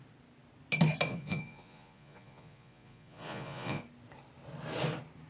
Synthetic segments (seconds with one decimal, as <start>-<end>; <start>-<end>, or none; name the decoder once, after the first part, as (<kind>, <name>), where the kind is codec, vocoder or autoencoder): 1.1-3.8 (vocoder, Vocos)